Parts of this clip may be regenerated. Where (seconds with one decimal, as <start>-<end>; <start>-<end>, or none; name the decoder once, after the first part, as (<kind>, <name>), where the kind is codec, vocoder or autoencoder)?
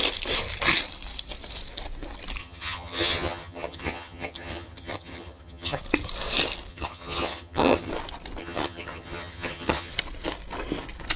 2.4-5.8 (vocoder, HiFi-GAN); 6.7-7.9; 8.4-9.9